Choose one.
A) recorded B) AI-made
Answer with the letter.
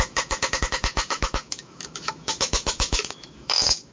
B